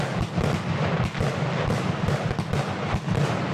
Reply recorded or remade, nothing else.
recorded